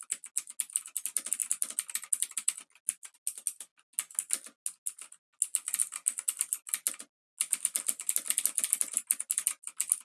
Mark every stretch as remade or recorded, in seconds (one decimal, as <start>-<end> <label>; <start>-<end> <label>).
0.0-10.0 recorded